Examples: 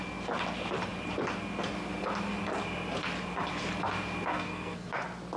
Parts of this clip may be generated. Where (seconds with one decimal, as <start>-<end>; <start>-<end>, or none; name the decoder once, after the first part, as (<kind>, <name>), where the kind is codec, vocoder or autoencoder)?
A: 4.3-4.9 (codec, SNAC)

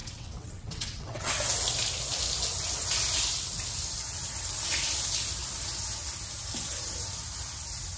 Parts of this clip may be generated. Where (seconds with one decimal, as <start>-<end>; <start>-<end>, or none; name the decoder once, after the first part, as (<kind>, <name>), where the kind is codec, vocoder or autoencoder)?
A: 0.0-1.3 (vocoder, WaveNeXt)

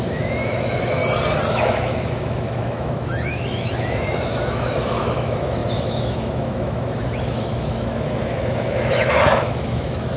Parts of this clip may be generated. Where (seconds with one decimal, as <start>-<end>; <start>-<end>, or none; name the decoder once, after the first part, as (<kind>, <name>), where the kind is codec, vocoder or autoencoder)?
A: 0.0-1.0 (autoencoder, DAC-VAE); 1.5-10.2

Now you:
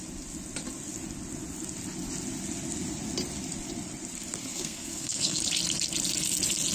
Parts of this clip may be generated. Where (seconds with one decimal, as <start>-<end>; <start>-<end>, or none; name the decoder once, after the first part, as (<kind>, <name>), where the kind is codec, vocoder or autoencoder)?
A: 4.4-5.4 (codec, SNAC)

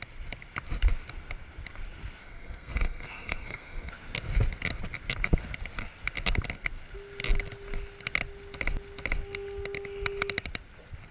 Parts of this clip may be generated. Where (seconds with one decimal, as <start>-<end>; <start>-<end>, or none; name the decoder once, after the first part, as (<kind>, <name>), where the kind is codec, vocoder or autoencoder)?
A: 2.2-3.9 (codec, SNAC)

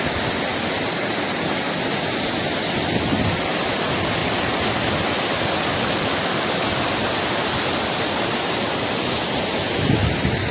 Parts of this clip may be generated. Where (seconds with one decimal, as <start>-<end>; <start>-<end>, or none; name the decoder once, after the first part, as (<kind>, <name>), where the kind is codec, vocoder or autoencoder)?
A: none

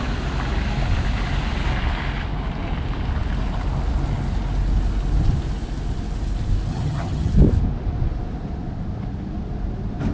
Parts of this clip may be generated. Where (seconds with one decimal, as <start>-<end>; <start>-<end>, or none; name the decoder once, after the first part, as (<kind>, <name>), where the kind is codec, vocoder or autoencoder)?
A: 6.7-7.3 (vocoder, HiFi-GAN)

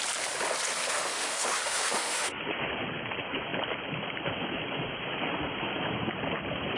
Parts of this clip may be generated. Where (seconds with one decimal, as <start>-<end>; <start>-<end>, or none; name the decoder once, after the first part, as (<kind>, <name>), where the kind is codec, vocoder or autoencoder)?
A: 0.8-2.4 (autoencoder, DAC-VAE)